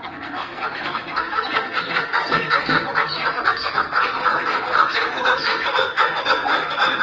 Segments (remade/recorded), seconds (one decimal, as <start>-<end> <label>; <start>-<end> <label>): 0.0-7.0 remade